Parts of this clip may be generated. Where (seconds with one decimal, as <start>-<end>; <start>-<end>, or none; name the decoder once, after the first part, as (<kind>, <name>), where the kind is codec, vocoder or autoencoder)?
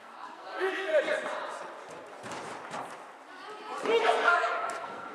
0.0-0.9 (codec, SNAC); 4.0-5.1